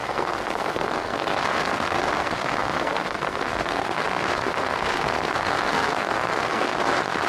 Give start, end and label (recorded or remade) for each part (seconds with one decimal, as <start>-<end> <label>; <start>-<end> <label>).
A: 0.0-7.3 remade